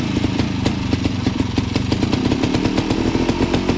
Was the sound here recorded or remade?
recorded